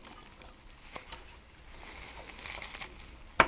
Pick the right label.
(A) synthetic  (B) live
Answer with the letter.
B